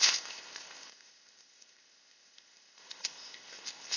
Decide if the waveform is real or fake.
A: fake